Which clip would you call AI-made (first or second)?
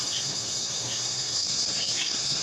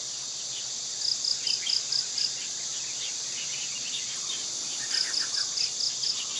first